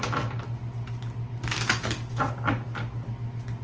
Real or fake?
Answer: real